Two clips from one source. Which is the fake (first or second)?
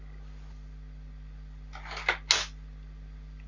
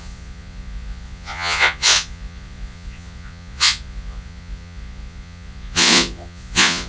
second